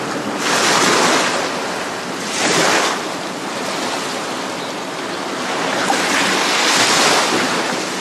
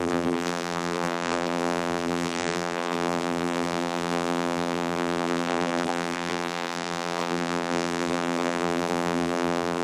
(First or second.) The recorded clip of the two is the first